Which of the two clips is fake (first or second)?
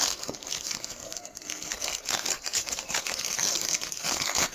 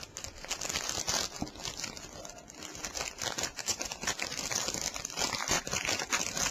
first